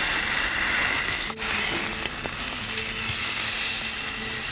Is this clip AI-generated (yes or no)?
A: no